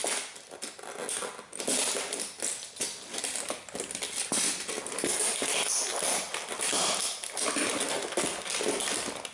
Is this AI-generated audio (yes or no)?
no